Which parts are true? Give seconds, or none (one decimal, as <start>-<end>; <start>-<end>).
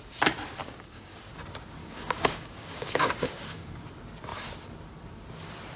0.0-0.6; 1.2-1.8; 3.8-5.8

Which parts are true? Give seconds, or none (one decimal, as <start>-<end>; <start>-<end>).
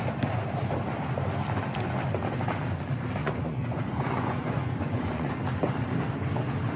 0.0-3.2; 5.3-6.8